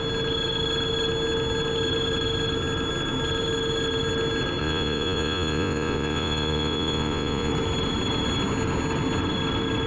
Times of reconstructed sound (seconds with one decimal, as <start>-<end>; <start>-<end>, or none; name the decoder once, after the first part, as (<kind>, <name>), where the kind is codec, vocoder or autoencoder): 4.6-7.5 (vocoder, Vocos)